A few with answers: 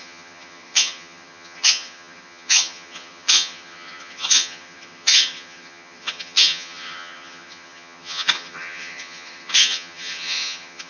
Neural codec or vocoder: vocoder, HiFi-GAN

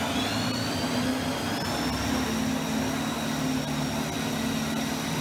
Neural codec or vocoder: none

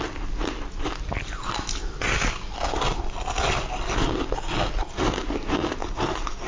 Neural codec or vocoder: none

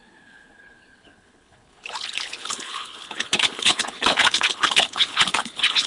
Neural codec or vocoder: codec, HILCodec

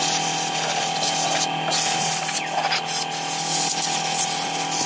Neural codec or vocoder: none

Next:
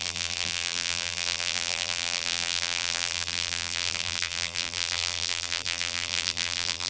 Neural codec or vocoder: vocoder, BigVGAN v2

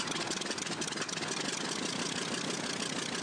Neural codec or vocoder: none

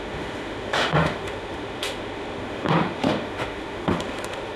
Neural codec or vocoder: autoencoder, DAC-VAE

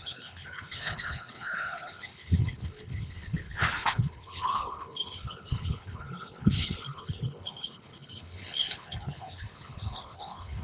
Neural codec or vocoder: codec, HILCodec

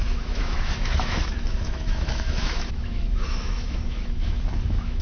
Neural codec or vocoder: autoencoder, DAC-VAE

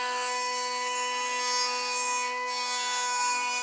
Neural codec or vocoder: codec, SNAC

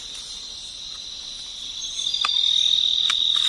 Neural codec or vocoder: none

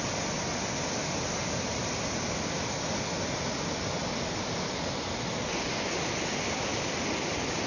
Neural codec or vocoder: none